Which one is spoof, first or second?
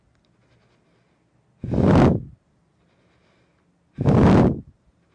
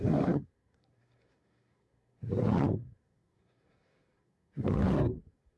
second